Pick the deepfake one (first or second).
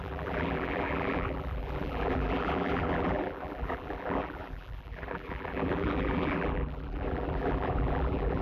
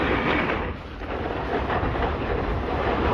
first